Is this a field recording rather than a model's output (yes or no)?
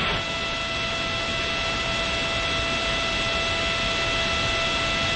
yes